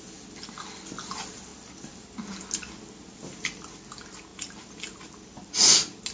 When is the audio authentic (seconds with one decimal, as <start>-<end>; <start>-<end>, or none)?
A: 0.0-6.1